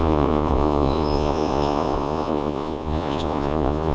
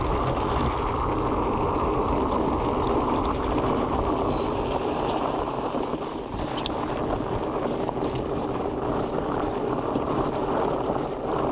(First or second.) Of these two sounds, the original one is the second